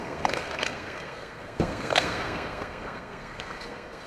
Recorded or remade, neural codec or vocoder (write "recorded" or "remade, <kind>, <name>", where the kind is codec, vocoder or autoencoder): remade, codec, SNAC